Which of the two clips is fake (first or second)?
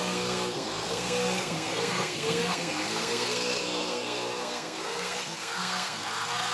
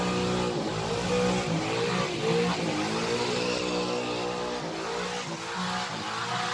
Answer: first